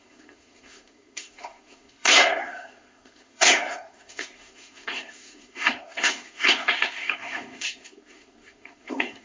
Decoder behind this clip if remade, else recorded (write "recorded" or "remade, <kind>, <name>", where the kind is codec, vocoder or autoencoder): remade, codec, SNAC